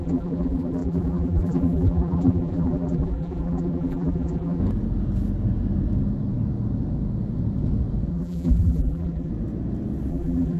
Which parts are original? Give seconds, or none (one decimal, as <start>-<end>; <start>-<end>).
4.6-8.1; 9.3-10.1